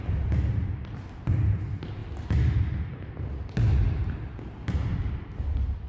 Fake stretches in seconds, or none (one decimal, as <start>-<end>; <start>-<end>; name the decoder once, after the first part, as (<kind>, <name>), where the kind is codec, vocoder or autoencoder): none